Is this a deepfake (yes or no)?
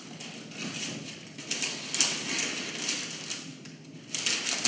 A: no